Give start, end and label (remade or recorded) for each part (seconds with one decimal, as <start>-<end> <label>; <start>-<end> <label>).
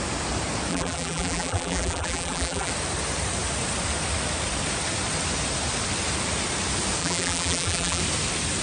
0.0-0.7 recorded; 0.7-2.7 remade; 2.7-7.0 recorded; 7.0-8.0 remade; 8.0-8.6 recorded